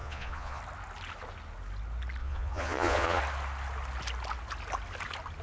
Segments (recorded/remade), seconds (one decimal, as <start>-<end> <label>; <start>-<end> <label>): 0.0-0.6 remade; 0.6-2.2 recorded; 2.2-3.2 remade; 3.2-5.4 recorded